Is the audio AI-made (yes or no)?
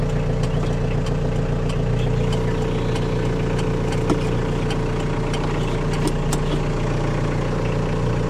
no